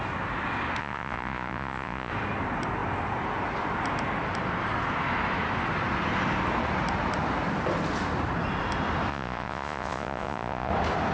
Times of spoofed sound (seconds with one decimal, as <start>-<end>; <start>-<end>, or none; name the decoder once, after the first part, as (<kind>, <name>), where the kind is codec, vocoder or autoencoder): 0.8-2.1 (vocoder, Vocos); 9.1-10.7